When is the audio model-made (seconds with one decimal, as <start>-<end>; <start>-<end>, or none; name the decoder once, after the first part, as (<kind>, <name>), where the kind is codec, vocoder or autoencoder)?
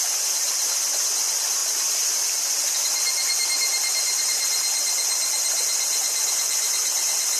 3.1-4.2 (vocoder, BigVGAN v2); 5.5-7.4